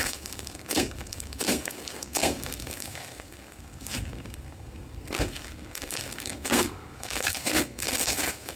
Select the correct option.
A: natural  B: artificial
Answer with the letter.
B